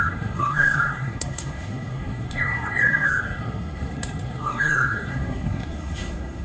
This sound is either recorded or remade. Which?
remade